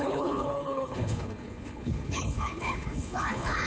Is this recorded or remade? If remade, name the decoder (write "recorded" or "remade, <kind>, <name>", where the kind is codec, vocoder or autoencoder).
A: remade, codec, HILCodec